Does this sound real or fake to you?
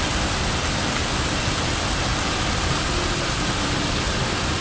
real